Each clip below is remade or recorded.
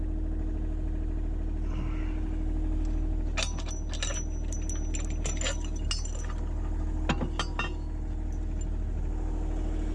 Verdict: recorded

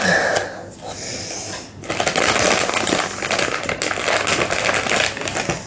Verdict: recorded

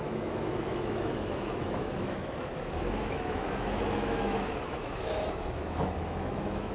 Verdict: remade